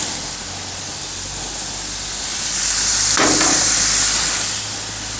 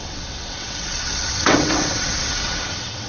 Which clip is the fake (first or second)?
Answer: second